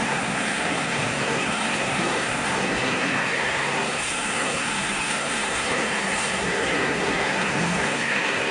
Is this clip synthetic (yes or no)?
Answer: yes